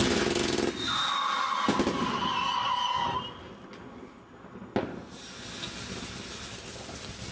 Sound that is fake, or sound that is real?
real